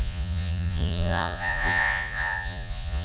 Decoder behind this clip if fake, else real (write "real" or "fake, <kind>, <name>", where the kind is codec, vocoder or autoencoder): fake, vocoder, Vocos